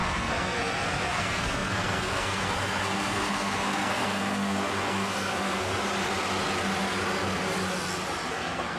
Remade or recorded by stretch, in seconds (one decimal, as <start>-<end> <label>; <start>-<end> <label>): 0.0-5.7 remade; 5.7-8.3 recorded; 8.3-8.8 remade